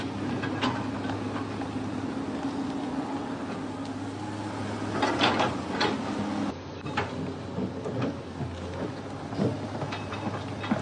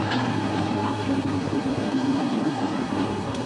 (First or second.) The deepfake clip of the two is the second